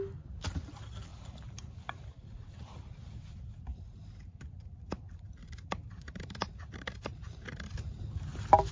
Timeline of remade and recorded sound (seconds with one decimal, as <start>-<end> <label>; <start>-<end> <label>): 0.0-1.1 recorded; 1.1-2.6 remade; 2.6-3.7 recorded; 3.7-8.0 remade; 8.0-8.7 recorded